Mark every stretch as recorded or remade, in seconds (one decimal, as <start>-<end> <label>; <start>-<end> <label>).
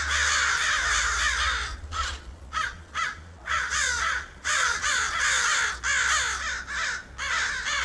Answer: 0.0-1.7 recorded; 1.7-5.2 remade; 5.2-7.8 recorded